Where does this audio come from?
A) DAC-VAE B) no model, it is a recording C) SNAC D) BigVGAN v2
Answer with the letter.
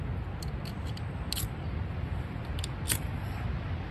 B